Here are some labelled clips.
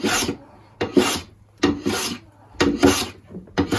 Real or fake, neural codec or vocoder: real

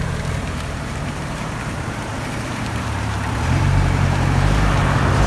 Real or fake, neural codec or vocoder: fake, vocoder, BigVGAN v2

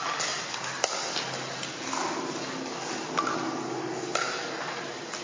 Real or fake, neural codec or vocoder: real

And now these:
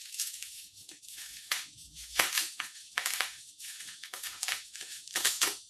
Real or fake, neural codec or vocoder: fake, autoencoder, DAC-VAE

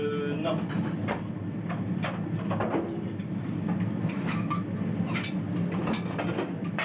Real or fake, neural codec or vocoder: real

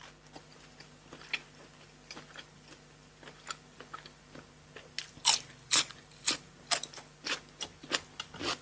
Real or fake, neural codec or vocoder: real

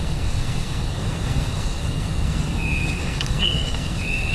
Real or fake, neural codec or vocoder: fake, codec, SNAC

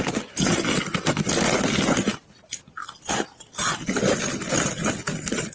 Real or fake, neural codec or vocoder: real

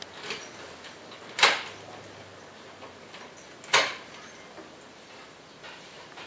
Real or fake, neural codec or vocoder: real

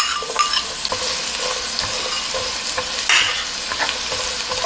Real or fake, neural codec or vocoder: real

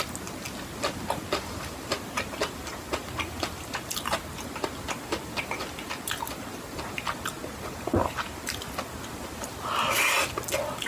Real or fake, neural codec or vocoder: real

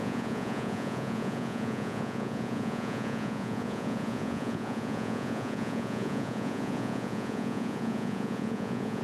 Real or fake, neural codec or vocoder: fake, vocoder, Vocos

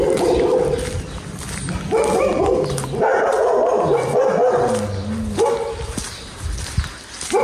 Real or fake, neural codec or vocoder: real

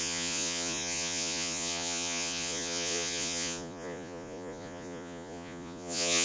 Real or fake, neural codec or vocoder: fake, vocoder, Vocos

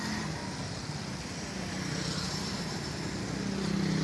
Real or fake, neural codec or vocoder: real